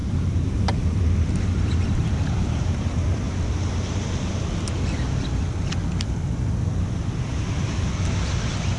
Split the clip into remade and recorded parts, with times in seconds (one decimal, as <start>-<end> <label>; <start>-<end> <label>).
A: 0.0-1.0 remade; 1.0-2.0 recorded; 2.0-3.4 remade; 3.4-7.3 recorded; 7.3-7.9 remade; 7.9-8.8 recorded

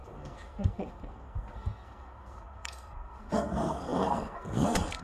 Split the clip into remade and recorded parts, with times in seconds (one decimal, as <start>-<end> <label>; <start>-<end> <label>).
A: 0.0-5.0 remade

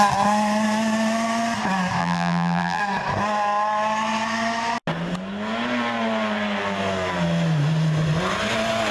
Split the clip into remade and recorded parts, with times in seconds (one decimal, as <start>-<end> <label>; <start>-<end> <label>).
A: 0.0-2.0 recorded; 2.0-2.8 remade; 2.8-8.9 recorded

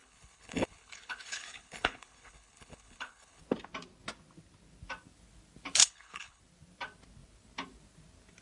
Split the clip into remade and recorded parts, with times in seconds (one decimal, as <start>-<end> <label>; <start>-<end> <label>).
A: 0.0-3.4 remade; 3.4-5.8 recorded; 5.8-6.4 remade; 6.4-8.4 recorded

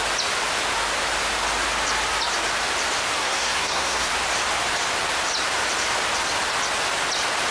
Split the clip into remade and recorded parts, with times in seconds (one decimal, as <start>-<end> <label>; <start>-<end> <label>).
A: 0.0-3.2 recorded; 3.2-4.1 remade; 4.1-7.5 recorded

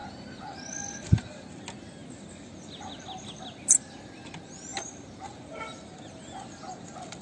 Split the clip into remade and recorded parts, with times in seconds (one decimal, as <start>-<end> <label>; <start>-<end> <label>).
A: 0.0-1.0 recorded; 1.0-7.2 remade